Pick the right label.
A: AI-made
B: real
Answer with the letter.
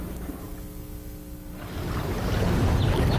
B